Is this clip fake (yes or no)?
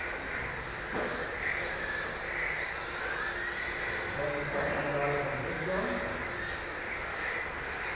no